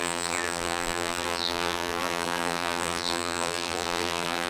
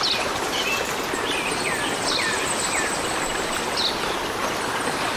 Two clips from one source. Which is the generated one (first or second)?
first